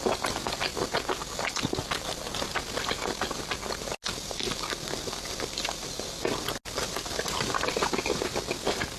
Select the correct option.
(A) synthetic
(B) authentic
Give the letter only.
B